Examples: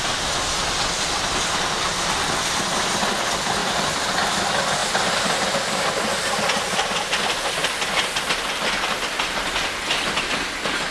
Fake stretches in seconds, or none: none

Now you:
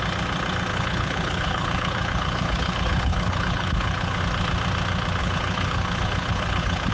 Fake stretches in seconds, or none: 0.7-4.2 (codec, HILCodec); 5.2-6.9

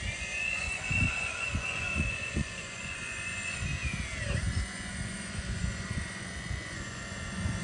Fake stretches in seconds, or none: 0.0-3.7 (vocoder, Vocos); 4.5-7.6

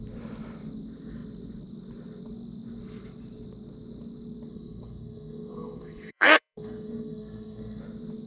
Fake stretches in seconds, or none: 4.5-7.8 (codec, SNAC)